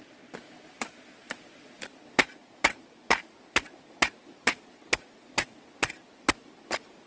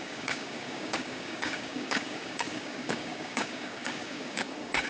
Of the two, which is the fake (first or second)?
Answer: second